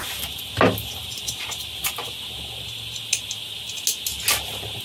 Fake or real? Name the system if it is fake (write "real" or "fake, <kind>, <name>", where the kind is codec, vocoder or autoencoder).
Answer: real